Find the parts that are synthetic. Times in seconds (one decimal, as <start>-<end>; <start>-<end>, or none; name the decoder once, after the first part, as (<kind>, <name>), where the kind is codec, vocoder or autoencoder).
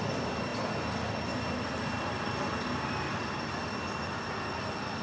none